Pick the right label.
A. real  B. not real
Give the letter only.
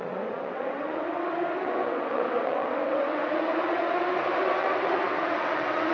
B